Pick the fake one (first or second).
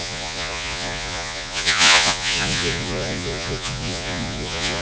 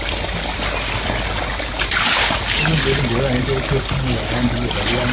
first